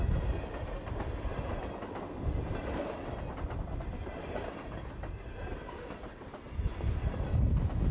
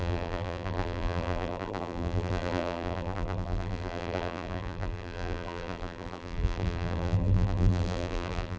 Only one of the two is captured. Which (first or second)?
first